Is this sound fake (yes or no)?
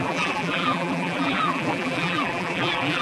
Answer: yes